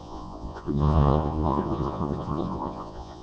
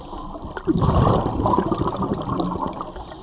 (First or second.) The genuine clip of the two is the second